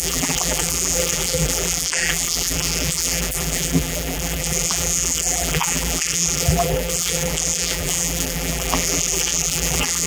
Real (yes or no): no